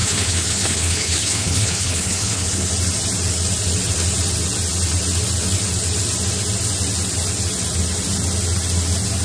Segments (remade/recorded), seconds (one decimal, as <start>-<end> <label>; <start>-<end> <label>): 0.0-2.7 remade; 2.7-9.2 recorded